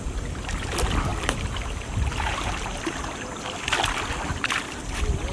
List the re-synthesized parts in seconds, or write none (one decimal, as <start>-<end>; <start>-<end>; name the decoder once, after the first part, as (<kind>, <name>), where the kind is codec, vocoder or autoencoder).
none